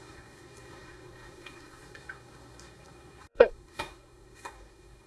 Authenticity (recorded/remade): remade